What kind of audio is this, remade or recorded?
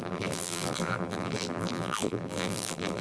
remade